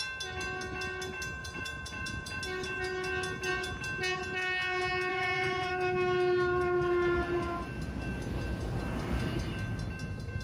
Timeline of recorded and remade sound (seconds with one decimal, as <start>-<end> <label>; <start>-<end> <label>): 0.0-1.4 recorded; 1.4-2.4 remade; 2.4-5.1 recorded; 5.1-5.7 remade; 5.7-10.4 recorded